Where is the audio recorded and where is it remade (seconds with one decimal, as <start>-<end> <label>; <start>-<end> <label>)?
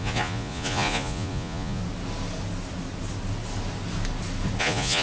0.0-1.8 remade; 1.8-4.6 recorded; 4.6-5.0 remade